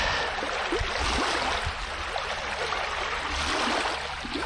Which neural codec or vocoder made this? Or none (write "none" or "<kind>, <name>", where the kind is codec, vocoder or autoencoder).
none